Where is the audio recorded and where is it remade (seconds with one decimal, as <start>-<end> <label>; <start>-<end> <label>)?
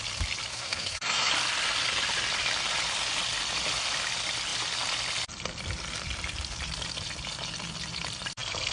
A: 0.0-0.5 recorded; 0.5-1.3 remade; 1.3-8.7 recorded